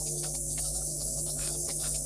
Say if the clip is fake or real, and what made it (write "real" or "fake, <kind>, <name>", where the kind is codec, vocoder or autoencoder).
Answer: fake, codec, SNAC